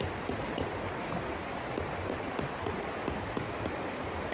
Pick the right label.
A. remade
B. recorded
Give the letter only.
B